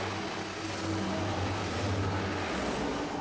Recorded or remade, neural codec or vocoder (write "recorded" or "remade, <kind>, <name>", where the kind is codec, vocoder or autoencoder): recorded